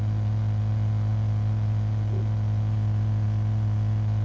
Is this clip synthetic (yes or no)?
no